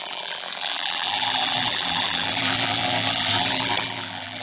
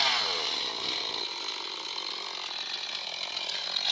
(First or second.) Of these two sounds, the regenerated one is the first